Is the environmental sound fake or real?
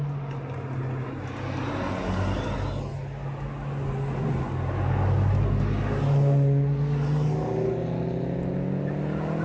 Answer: real